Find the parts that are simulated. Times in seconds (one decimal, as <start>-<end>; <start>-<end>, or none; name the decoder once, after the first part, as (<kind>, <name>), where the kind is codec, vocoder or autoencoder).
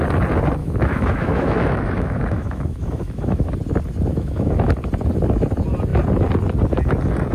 0.6-3.5 (autoencoder, DAC-VAE); 4.1-4.7